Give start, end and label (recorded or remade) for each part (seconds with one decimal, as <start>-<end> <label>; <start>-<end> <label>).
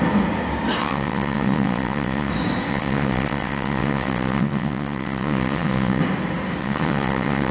0.0-0.8 recorded; 0.8-2.3 remade; 2.3-2.7 recorded; 2.7-6.0 remade; 6.0-6.6 recorded; 6.6-7.5 remade